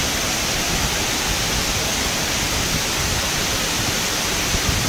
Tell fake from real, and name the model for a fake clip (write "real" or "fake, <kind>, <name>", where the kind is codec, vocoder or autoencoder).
real